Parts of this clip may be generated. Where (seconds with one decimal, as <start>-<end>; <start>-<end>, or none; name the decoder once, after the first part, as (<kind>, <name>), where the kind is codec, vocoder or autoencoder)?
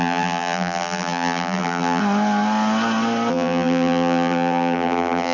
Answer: 0.0-2.0 (vocoder, BigVGAN v2); 3.3-5.3